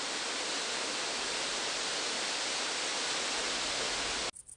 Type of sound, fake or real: real